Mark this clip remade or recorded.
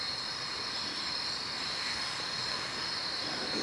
recorded